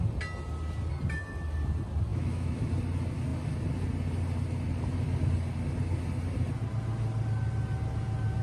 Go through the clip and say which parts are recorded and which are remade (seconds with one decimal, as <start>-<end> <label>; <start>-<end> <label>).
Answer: 0.0-2.1 recorded; 2.1-2.7 remade; 2.7-8.4 recorded